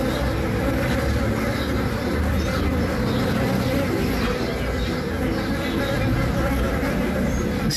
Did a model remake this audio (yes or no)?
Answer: no